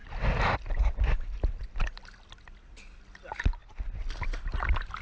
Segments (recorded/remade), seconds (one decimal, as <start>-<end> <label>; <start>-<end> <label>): 0.0-5.0 recorded